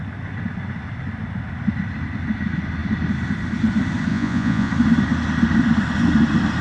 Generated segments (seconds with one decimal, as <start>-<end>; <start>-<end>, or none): 4.1-4.7